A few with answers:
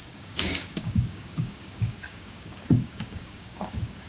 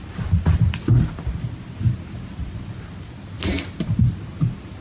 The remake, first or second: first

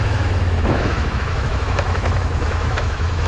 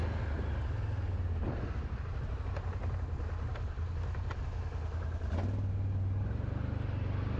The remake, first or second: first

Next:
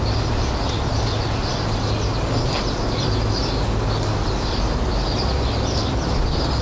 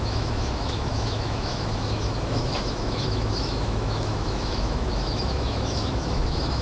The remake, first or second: second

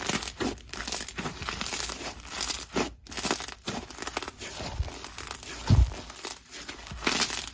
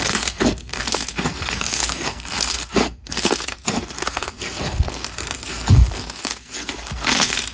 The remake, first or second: second